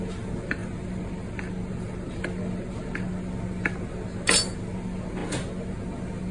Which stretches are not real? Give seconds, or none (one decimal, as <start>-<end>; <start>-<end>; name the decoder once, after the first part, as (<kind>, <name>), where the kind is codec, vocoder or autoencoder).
none

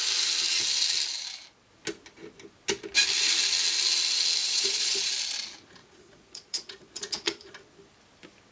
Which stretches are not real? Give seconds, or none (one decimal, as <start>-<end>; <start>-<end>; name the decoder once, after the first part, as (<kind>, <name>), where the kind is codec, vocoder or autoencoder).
4.4-5.1 (vocoder, Vocos); 5.8-7.5

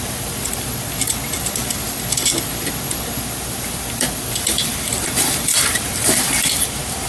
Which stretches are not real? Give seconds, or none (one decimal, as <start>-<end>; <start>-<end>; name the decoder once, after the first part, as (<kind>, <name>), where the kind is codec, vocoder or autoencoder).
0.0-0.7 (vocoder, BigVGAN v2); 3.2-7.1